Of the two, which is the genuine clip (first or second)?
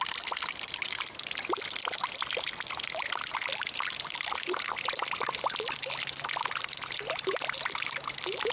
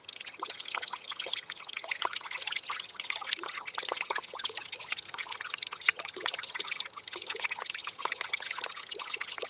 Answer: first